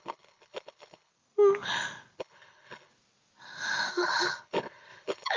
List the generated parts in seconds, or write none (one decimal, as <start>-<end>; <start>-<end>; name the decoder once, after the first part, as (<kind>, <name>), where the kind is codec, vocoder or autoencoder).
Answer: 0.0-1.1 (codec, HILCodec); 2.2-2.9; 3.9-5.4